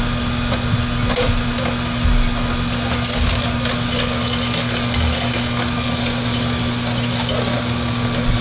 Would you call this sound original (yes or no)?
yes